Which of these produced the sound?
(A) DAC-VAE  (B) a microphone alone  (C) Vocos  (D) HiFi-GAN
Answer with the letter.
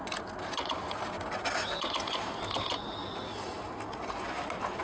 B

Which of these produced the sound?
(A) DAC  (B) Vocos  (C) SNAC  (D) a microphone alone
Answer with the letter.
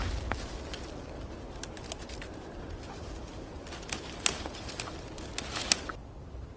D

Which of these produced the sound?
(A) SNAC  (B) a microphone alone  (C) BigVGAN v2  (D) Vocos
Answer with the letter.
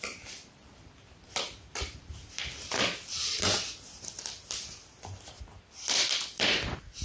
B